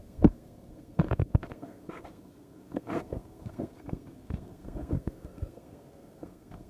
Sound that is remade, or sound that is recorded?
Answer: remade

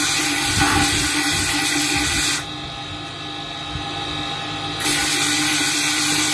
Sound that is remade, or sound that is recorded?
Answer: recorded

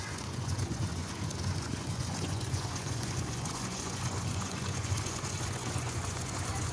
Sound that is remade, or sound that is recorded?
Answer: remade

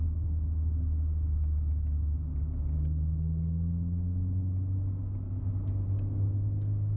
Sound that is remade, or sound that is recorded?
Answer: recorded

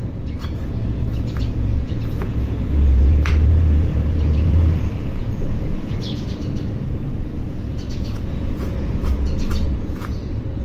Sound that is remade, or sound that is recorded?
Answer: remade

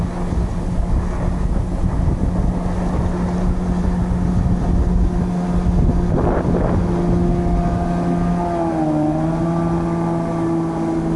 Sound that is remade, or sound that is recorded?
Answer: recorded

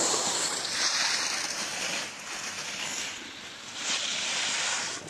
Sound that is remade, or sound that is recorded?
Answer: recorded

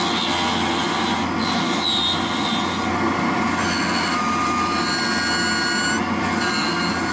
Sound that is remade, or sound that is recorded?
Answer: recorded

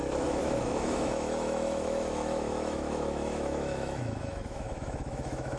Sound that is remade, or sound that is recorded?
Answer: remade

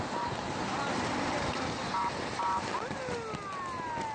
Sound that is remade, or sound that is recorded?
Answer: recorded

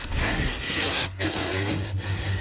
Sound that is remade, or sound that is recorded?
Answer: remade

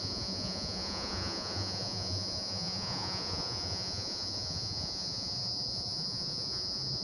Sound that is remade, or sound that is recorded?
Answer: remade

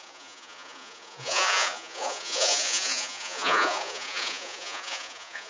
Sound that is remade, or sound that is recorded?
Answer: remade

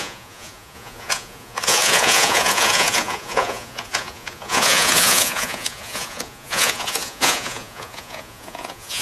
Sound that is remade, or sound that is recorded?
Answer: remade